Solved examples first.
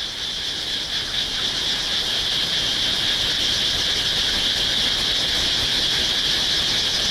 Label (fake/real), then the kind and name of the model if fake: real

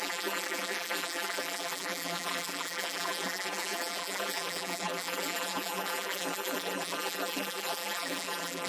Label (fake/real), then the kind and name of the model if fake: fake, vocoder, BigVGAN v2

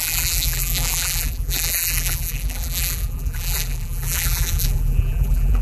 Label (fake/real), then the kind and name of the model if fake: fake, vocoder, BigVGAN v2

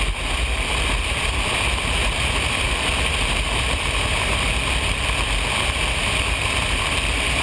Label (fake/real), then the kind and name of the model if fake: fake, vocoder, BigVGAN v2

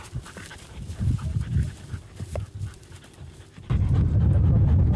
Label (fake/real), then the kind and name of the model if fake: real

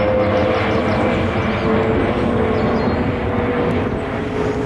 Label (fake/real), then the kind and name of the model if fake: real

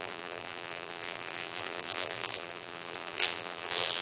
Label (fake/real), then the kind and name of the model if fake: fake, vocoder, BigVGAN v2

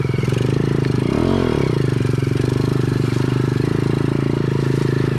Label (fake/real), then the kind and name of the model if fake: real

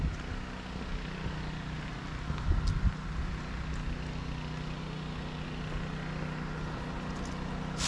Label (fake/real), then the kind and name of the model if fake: real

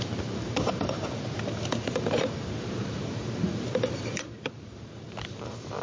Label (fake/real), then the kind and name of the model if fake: fake, vocoder, BigVGAN v2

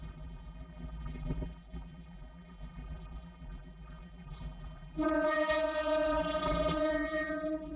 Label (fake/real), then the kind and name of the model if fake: fake, vocoder, BigVGAN v2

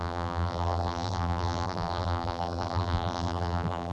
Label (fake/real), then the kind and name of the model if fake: fake, vocoder, BigVGAN v2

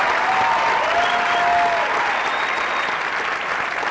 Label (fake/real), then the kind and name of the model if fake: real